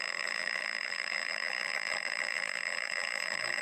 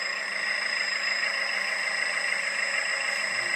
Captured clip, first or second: second